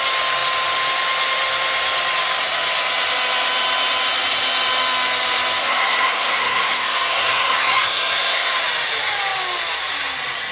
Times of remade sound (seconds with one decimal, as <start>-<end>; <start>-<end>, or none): 5.6-8.5

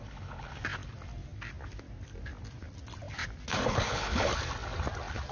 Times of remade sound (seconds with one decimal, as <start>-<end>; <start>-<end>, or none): 0.0-0.5; 3.7-4.3

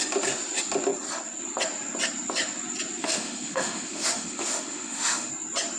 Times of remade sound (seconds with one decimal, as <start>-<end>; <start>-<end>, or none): 3.0-5.3

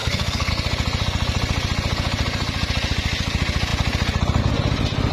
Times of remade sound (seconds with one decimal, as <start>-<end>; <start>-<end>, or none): 0.0-0.5